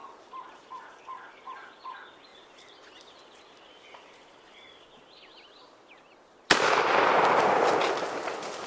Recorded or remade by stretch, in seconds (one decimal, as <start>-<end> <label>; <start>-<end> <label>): 0.0-8.7 recorded